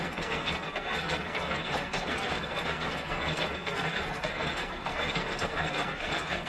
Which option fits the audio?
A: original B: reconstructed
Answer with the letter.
B